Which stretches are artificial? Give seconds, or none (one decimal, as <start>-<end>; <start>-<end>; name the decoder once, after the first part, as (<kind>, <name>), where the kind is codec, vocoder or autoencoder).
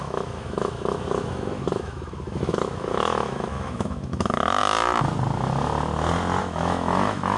0.0-4.6 (autoencoder, DAC-VAE); 6.4-7.4